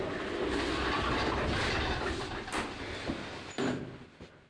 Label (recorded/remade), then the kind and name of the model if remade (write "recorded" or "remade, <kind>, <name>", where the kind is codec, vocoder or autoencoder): recorded